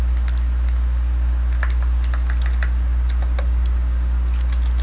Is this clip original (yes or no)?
yes